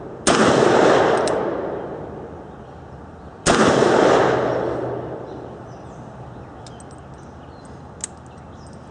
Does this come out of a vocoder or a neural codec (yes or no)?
no